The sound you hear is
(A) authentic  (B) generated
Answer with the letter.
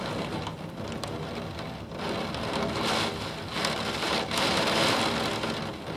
A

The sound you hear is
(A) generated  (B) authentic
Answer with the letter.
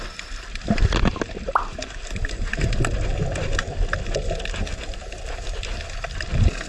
B